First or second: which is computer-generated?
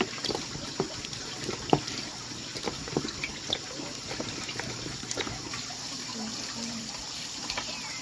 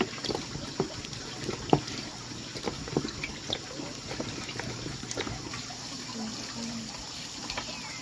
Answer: first